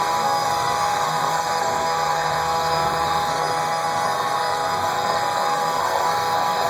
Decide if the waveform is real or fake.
fake